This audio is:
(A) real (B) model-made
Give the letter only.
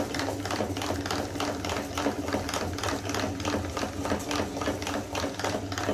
A